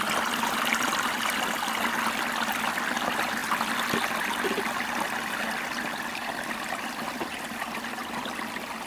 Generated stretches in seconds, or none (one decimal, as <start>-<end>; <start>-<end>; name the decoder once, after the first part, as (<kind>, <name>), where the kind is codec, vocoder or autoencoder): none